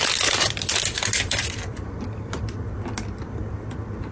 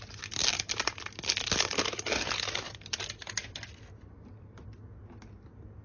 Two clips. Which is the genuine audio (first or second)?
second